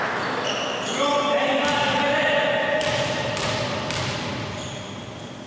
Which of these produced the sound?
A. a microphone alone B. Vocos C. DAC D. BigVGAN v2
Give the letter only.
A